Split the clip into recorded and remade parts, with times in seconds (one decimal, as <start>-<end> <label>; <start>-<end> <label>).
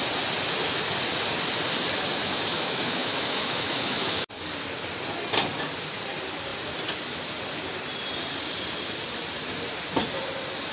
0.0-2.2 recorded; 2.2-4.3 remade; 4.3-10.7 recorded